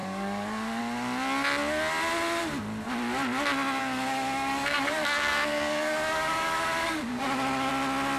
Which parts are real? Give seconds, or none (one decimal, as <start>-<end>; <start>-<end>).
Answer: 0.8-3.8; 7.7-8.2